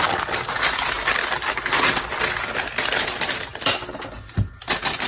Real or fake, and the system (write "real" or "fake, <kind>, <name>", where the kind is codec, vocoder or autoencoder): real